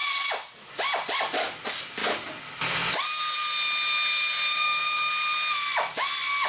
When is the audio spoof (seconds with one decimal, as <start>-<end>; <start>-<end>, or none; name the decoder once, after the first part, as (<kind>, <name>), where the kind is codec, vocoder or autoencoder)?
4.5-5.1 (codec, DAC)

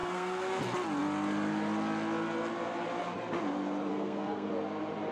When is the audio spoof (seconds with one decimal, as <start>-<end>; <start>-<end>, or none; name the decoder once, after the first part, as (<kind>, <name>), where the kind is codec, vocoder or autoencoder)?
0.0-0.6 (codec, SNAC); 3.9-4.5

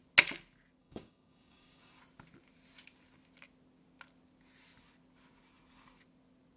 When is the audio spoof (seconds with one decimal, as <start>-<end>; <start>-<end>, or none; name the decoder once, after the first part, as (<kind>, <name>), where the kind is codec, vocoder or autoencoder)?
0.8-2.0 (codec, DAC)

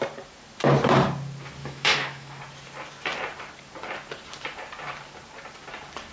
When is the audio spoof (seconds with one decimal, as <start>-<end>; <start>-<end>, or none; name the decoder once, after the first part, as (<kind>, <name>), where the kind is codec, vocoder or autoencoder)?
1.6-2.4 (autoencoder, DAC-VAE)

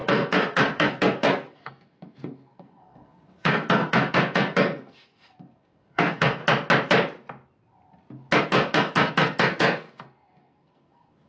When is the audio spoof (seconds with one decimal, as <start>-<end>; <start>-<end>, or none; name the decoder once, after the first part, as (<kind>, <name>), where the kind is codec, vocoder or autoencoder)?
0.0-6.4 (codec, SNAC); 8.4-11.3